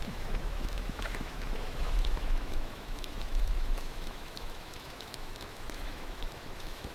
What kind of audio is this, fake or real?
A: fake